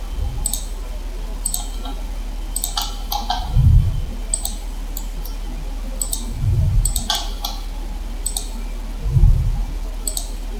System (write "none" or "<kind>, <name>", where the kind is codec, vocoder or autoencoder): none